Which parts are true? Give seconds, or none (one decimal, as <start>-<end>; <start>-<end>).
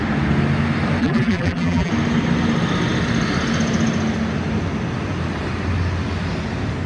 0.0-1.0; 1.9-6.9